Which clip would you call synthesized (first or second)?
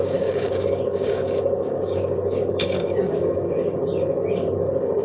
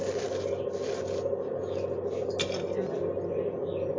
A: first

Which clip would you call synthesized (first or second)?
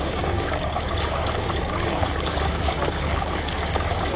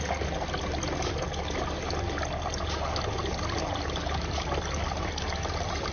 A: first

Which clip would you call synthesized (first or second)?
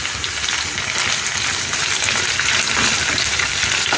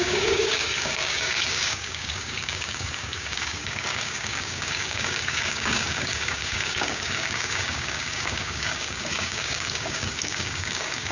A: second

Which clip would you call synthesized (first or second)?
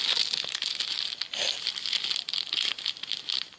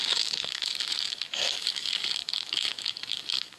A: second